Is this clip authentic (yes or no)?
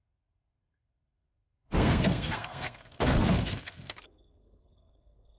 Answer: no